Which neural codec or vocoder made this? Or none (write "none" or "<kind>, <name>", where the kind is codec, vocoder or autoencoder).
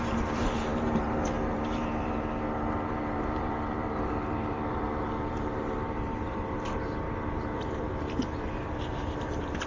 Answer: vocoder, BigVGAN v2